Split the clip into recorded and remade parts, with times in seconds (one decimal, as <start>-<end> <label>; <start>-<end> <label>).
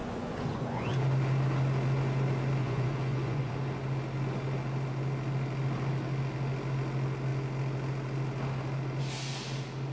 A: 0.0-0.9 remade; 0.9-2.6 recorded; 2.6-3.5 remade; 3.5-9.9 recorded